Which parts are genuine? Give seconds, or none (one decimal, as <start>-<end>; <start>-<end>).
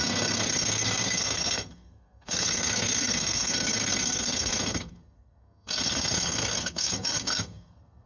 none